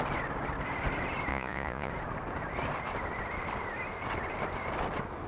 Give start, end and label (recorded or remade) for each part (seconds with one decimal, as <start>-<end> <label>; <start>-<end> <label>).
0.0-1.3 recorded; 1.3-1.9 remade; 1.9-5.3 recorded